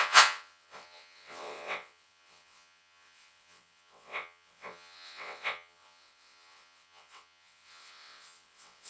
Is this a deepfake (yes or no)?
yes